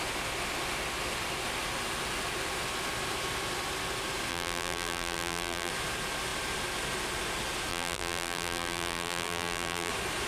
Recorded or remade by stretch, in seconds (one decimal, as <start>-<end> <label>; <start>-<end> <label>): 0.0-4.3 recorded; 4.3-5.7 remade; 5.7-7.7 recorded; 7.7-9.9 remade; 9.9-10.3 recorded